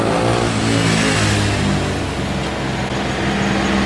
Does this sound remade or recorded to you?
recorded